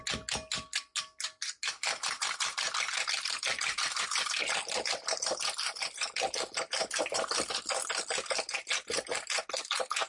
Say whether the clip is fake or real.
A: real